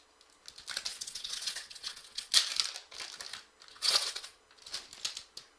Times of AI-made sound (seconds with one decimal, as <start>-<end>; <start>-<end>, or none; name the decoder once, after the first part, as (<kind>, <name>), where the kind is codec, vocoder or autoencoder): 0.9-2.3 (vocoder, WaveNeXt); 3.7-4.4